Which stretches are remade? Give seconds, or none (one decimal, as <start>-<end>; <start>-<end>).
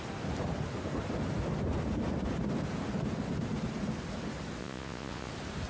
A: 4.6-5.3